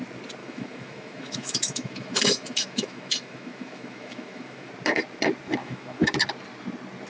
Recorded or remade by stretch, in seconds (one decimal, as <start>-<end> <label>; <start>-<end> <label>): 0.0-0.4 recorded; 0.4-4.7 remade; 4.7-5.6 recorded; 5.6-6.1 remade; 6.1-7.1 recorded